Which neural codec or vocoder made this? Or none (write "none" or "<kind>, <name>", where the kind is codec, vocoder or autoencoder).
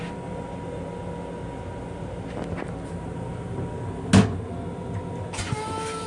none